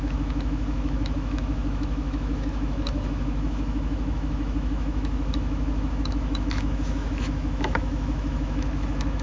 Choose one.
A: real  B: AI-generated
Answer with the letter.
B